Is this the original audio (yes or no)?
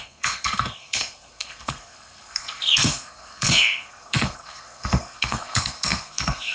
no